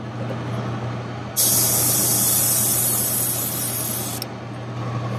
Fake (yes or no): no